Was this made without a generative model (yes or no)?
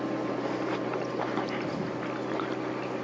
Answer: yes